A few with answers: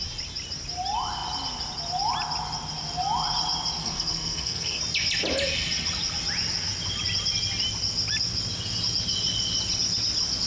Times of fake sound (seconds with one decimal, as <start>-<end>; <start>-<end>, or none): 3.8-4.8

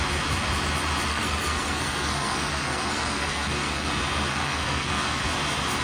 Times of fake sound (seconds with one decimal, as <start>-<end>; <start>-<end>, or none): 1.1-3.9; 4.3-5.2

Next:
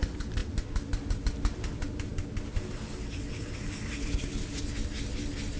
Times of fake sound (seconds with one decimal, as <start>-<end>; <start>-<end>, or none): none

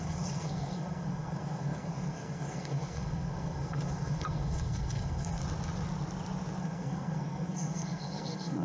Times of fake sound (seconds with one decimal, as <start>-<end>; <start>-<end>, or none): 0.0-5.4; 6.6-8.6